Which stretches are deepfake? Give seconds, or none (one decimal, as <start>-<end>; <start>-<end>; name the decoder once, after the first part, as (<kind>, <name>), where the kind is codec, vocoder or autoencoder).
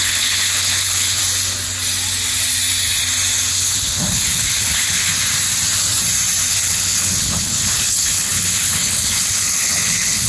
0.0-1.2 (codec, HILCodec); 3.5-5.2; 6.5-10.3